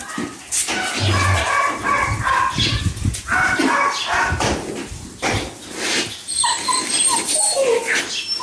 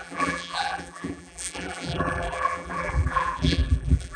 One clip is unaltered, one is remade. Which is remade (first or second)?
second